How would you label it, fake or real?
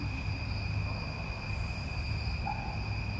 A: real